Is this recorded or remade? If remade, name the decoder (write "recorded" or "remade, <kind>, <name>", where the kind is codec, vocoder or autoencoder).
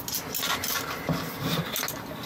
recorded